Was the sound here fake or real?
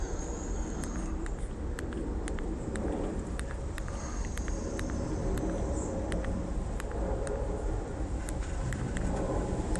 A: fake